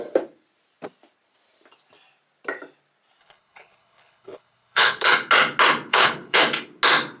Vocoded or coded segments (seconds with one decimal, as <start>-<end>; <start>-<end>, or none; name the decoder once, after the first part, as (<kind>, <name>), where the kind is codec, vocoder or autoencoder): 3.2-5.1 (codec, HILCodec); 5.9-6.4